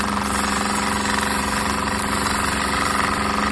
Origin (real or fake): real